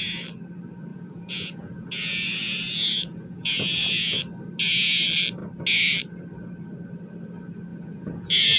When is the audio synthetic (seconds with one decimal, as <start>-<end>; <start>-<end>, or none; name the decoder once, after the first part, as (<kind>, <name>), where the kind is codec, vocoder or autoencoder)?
0.9-4.2 (vocoder, Vocos); 7.7-8.6